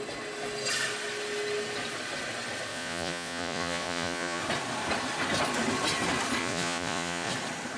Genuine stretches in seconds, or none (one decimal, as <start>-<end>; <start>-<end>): 0.0-2.7; 4.4-6.4; 7.3-7.8